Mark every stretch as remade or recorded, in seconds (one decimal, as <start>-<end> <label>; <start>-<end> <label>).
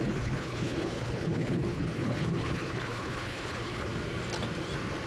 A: 0.0-3.9 remade; 3.9-5.1 recorded